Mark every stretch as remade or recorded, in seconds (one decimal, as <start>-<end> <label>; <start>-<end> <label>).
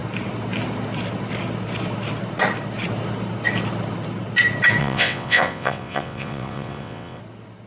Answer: 0.0-4.8 recorded; 4.8-7.2 remade; 7.2-7.7 recorded